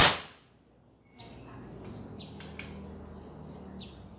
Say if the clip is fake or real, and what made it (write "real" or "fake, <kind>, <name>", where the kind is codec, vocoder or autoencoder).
real